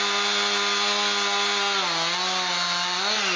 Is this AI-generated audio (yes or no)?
no